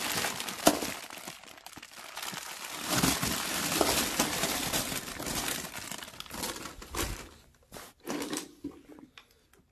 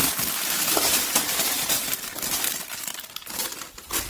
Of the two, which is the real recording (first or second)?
first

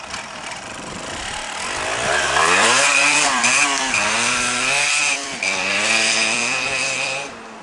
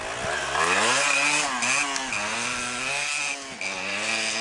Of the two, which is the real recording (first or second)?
second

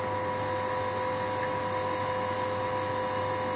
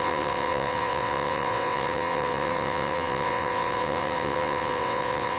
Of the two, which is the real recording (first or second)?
first